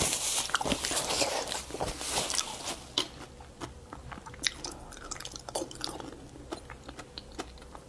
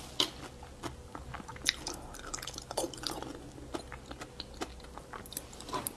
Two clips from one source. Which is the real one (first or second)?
second